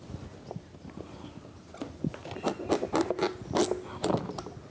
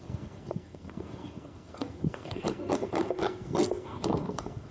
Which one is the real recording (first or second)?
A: first